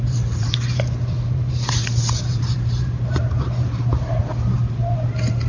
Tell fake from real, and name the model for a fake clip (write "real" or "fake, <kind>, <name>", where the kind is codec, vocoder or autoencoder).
fake, vocoder, BigVGAN v2